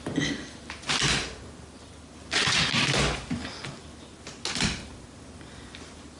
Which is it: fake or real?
real